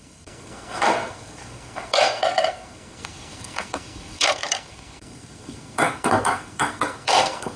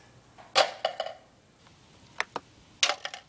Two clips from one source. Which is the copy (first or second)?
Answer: first